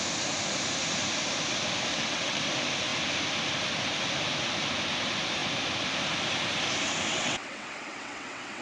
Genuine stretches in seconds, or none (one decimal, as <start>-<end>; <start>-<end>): 0.0-1.9; 2.4-7.1